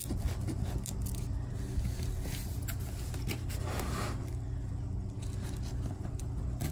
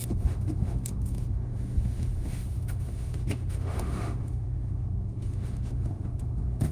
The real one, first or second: first